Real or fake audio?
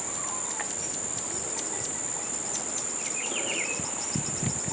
fake